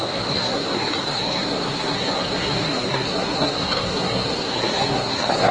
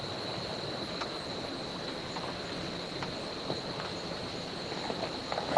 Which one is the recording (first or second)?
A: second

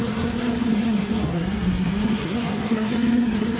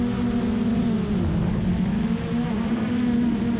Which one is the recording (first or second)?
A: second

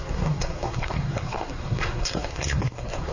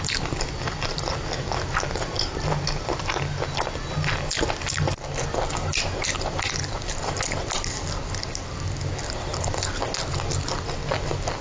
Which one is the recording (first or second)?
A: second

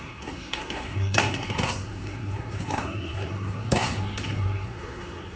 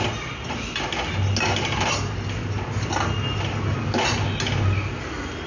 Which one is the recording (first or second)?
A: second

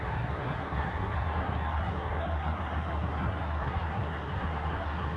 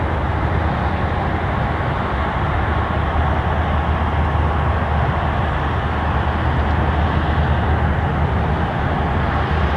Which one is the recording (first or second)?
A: second